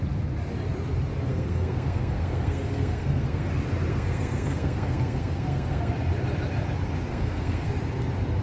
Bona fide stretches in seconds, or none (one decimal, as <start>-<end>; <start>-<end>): 0.0-1.3; 3.5-3.9; 5.9-7.1; 7.7-8.4